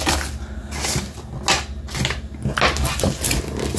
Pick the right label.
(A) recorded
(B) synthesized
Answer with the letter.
A